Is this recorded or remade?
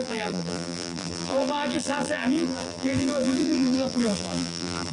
remade